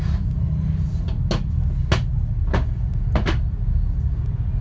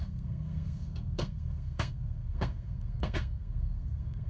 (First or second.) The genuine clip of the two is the first